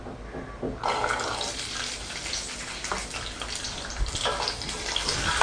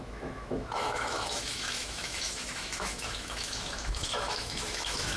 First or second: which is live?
first